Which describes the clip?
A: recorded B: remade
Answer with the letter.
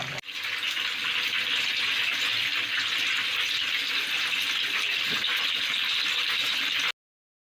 A